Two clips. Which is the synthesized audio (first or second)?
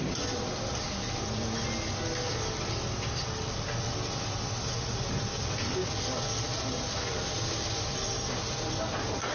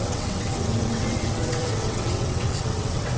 second